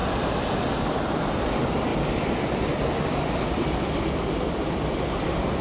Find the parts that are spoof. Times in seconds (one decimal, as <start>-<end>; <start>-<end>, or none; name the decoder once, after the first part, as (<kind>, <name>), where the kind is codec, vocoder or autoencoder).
none